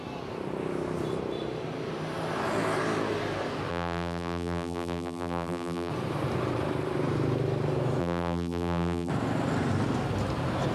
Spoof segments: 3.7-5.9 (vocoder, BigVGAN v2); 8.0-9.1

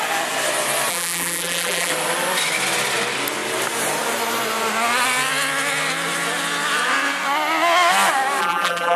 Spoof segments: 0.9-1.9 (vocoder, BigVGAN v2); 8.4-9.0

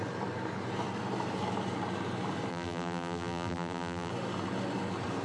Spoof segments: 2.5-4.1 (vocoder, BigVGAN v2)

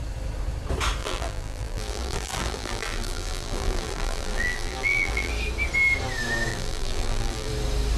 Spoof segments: 1.0-5.3 (vocoder, BigVGAN v2); 6.5-7.5